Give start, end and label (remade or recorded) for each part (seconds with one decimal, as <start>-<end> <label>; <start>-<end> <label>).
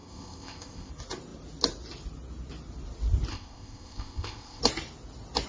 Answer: 0.0-0.9 remade; 0.9-3.3 recorded; 3.3-4.6 remade; 4.6-5.5 recorded